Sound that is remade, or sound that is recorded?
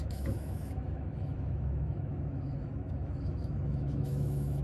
remade